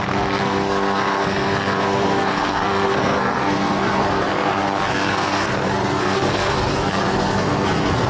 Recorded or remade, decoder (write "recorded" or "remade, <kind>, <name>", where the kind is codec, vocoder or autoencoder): remade, codec, SNAC